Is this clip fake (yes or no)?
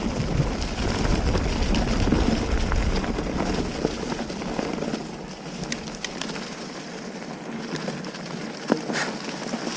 no